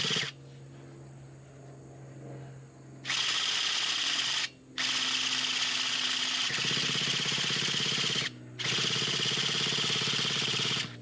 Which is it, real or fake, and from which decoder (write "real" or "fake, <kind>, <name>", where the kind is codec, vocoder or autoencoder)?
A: real